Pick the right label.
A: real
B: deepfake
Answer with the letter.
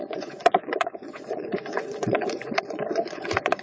B